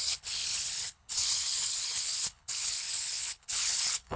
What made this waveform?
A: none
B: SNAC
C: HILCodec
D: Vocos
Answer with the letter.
C